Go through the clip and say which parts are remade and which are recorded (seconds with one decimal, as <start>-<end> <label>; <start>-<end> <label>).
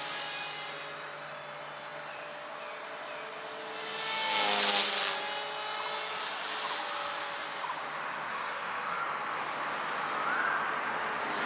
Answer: 0.0-8.3 recorded; 8.3-9.0 remade; 9.0-11.5 recorded